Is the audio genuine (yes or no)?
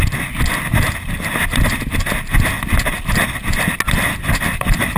yes